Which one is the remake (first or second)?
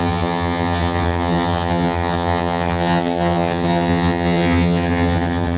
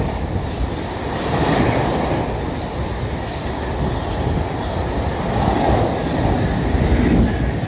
first